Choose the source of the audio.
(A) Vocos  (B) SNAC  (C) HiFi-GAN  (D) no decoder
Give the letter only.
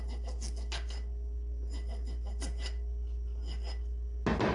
D